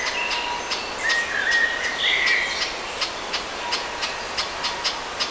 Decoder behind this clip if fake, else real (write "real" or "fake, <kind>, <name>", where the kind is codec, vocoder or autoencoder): real